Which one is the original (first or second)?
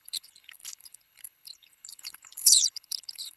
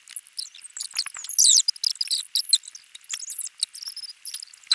second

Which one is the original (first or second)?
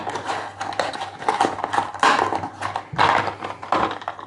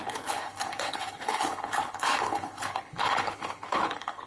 first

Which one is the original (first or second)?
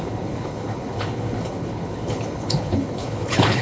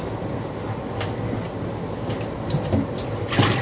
second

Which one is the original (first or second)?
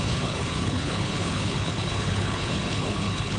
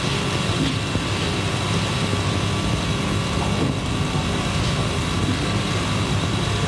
second